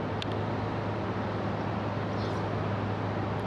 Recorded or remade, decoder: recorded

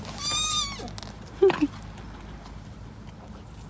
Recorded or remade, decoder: recorded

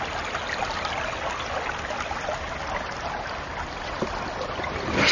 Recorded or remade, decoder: recorded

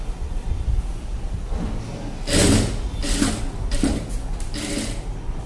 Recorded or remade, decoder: recorded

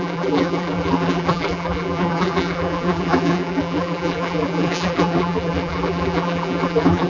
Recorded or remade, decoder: remade, vocoder, BigVGAN v2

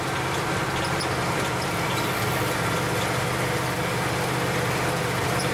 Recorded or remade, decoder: remade, vocoder, BigVGAN v2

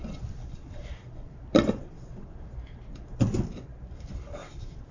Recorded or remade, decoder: remade, vocoder, BigVGAN v2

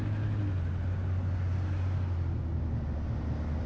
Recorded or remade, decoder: recorded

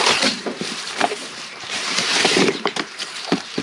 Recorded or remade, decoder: remade, vocoder, BigVGAN v2